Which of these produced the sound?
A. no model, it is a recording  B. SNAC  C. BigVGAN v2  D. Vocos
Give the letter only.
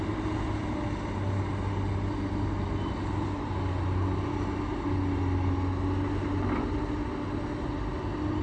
A